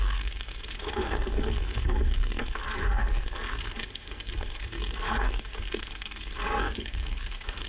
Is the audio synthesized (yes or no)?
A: yes